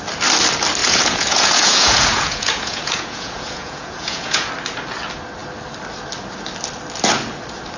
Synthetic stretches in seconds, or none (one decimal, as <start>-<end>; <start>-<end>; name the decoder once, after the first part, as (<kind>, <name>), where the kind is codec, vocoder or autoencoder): 0.8-4.5 (vocoder, Vocos)